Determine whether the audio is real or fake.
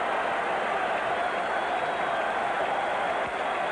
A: real